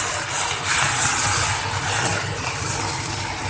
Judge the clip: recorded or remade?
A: recorded